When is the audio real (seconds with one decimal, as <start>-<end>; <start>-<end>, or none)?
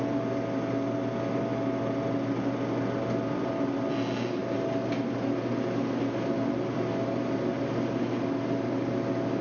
0.0-9.4